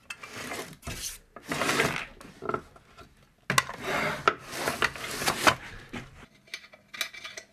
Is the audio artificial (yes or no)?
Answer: no